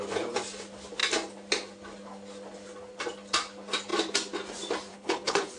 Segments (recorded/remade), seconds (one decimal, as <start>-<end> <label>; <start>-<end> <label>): 0.0-4.9 recorded; 4.9-5.6 remade